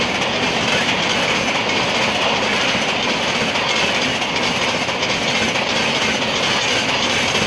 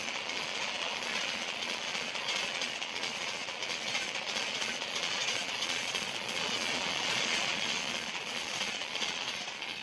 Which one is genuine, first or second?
first